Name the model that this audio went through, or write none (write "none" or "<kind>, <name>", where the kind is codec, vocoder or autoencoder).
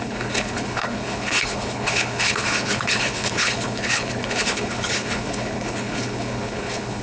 codec, HILCodec